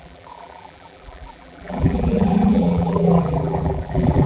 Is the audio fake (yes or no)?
yes